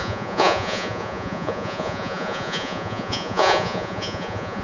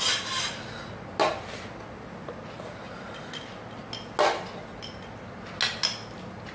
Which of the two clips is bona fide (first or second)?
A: second